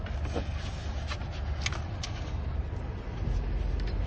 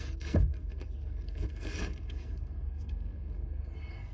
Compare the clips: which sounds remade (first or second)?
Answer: second